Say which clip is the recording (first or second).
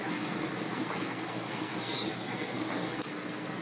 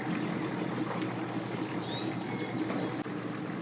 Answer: second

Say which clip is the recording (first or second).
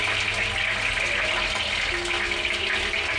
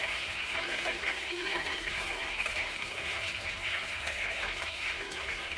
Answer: first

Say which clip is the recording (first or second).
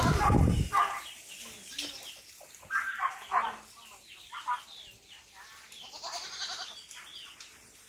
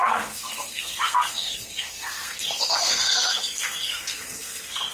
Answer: first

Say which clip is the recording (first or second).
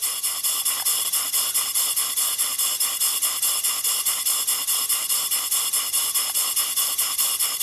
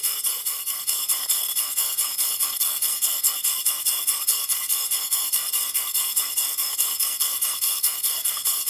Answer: first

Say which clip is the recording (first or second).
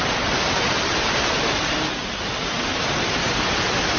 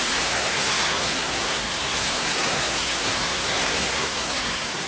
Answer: first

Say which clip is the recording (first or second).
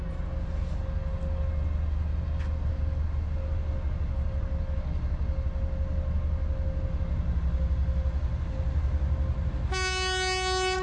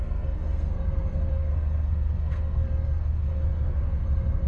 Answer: first